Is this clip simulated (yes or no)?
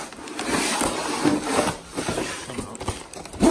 no